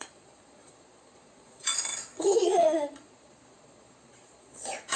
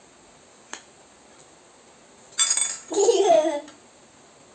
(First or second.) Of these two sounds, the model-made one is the first